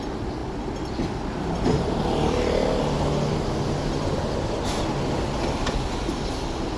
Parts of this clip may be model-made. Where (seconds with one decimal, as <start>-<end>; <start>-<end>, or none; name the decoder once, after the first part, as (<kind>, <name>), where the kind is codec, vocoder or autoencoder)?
none